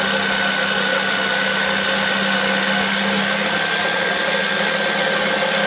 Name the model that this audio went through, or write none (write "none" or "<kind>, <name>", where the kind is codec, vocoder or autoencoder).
none